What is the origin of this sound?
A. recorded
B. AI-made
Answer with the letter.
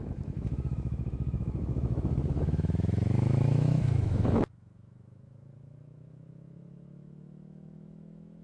B